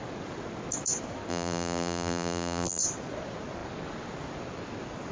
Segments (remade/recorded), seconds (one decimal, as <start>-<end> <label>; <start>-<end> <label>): 0.0-1.3 recorded; 1.3-2.8 remade; 2.8-5.1 recorded